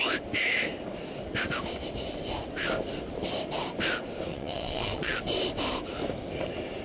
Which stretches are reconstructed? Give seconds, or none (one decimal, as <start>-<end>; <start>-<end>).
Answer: 4.3-5.2

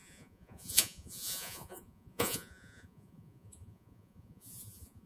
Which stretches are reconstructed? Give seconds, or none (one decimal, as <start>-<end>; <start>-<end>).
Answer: 0.0-5.1

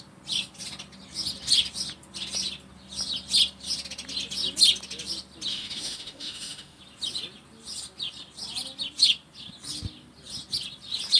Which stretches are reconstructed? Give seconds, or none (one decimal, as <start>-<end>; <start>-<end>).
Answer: 5.5-6.8